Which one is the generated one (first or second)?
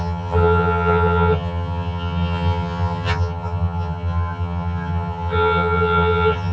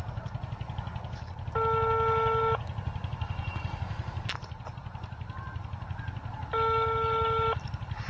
first